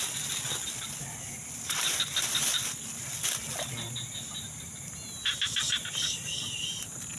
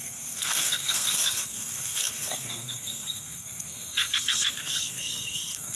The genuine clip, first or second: first